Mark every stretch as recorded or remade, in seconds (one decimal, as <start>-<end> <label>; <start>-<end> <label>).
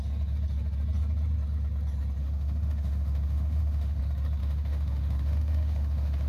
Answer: 0.0-2.2 recorded; 2.2-4.0 remade; 4.0-4.4 recorded; 4.4-6.3 remade